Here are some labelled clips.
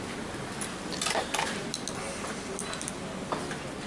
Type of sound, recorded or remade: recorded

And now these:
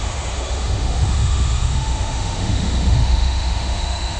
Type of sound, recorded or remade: remade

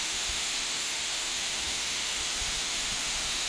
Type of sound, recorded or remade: remade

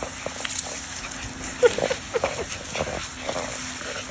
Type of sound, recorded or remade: recorded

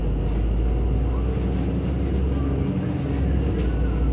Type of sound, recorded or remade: recorded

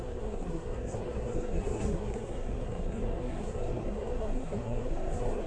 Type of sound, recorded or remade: remade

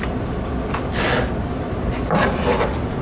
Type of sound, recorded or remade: recorded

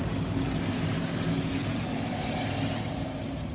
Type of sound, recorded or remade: remade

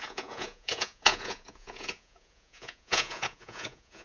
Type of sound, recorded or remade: remade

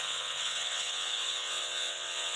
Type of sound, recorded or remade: remade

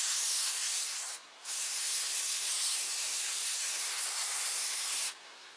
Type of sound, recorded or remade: remade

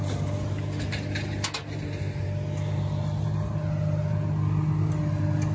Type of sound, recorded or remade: recorded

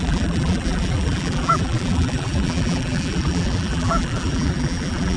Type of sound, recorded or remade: remade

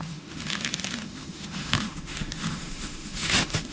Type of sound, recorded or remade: remade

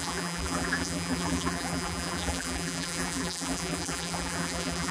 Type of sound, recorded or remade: remade